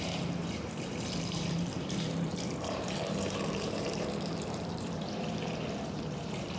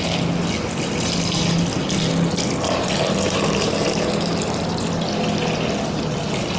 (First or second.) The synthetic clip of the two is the first